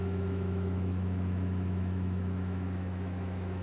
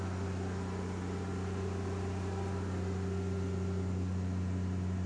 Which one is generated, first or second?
first